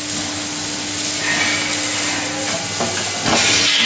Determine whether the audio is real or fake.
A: real